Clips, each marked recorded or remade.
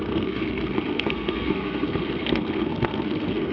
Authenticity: remade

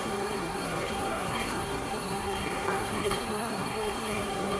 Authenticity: remade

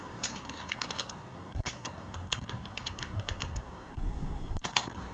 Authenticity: remade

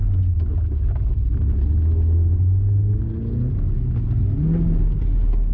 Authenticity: recorded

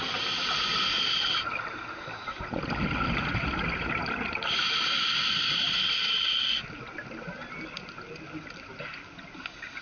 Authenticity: recorded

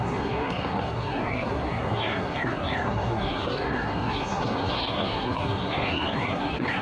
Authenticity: remade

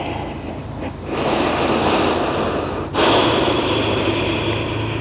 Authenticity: recorded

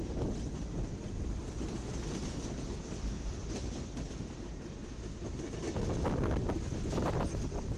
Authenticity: recorded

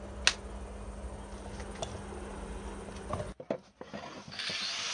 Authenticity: recorded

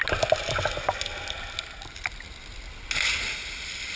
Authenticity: recorded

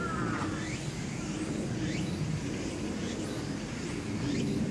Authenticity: recorded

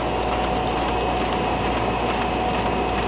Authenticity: recorded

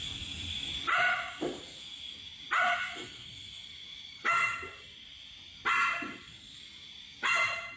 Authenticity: recorded